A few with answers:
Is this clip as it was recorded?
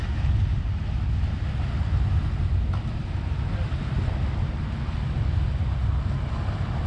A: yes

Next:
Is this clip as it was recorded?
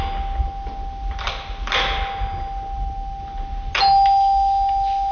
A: yes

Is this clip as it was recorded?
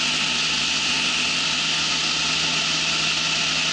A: yes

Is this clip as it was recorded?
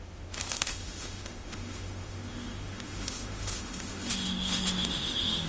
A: no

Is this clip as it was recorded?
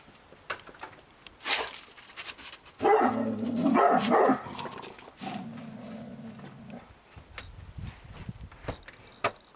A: yes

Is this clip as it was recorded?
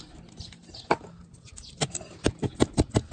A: yes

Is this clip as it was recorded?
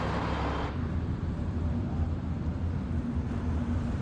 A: yes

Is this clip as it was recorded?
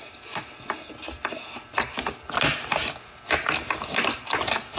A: yes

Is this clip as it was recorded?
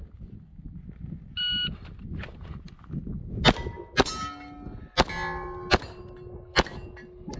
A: yes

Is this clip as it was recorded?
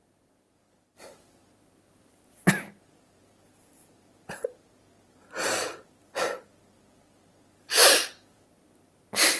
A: no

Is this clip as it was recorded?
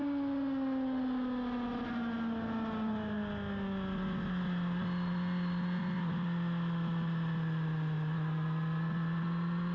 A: yes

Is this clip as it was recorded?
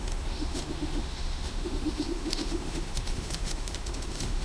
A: no